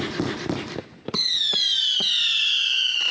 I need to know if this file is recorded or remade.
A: recorded